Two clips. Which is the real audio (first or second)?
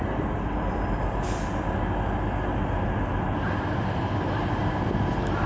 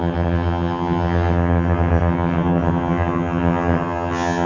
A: first